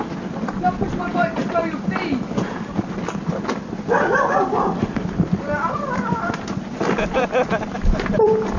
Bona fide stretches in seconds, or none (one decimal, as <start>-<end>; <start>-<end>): 0.0-8.6